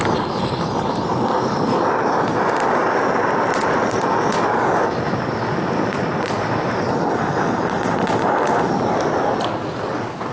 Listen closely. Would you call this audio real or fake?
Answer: real